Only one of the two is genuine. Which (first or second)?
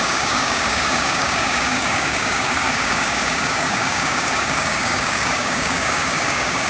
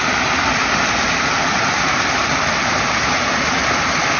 second